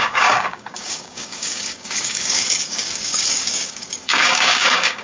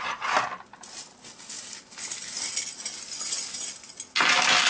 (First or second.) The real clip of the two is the second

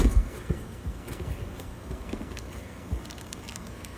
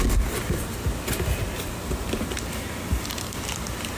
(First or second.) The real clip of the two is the second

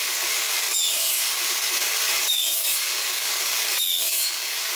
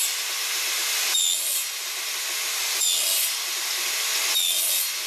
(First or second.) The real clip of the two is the second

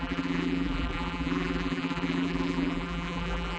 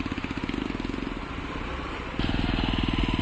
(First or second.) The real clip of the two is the second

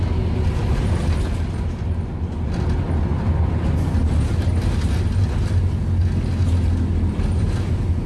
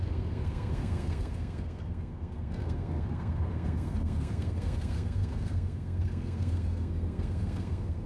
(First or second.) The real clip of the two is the first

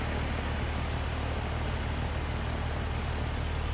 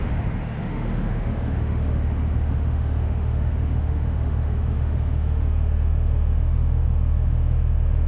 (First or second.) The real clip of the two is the first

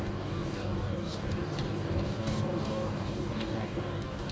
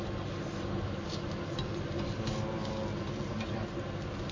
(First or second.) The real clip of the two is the second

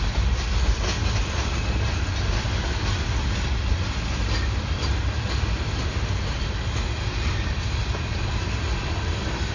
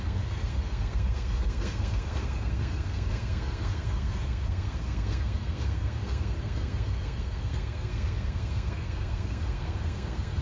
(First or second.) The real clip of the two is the first